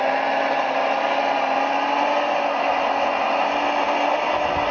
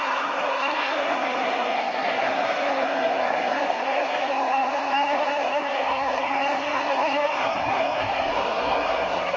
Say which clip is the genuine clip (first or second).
first